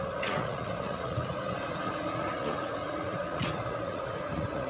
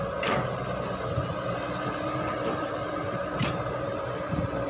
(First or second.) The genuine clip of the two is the second